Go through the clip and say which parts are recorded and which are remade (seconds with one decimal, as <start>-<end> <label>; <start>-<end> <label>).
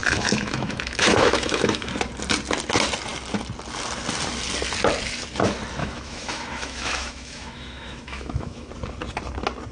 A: 0.0-1.9 remade; 1.9-5.8 recorded; 5.8-8.7 remade; 8.7-9.7 recorded